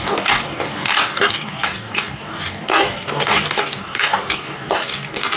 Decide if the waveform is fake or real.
fake